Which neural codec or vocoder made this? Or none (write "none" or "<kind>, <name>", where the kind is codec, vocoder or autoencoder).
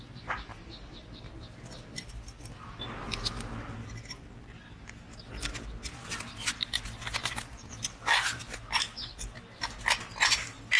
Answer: none